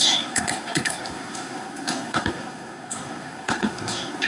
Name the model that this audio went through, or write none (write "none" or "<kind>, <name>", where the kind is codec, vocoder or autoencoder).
codec, SNAC